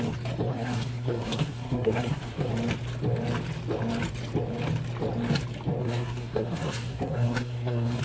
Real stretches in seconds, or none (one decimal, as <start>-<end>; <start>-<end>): 0.0-0.5; 2.5-5.8